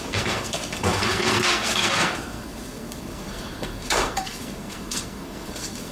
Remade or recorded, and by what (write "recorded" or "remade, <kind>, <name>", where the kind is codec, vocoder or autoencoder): remade, codec, SNAC